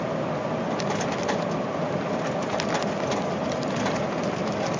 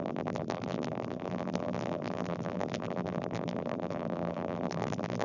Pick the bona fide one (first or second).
first